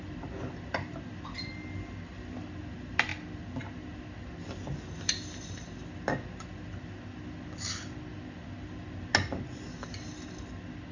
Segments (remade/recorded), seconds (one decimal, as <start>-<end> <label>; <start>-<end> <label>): 0.0-10.9 recorded